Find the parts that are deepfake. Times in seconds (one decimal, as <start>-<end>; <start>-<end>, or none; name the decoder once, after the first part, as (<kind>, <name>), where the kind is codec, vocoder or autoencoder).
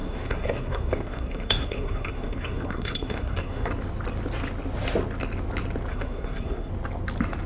0.0-3.7 (codec, SNAC); 5.9-6.7